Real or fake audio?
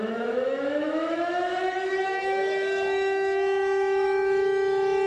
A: fake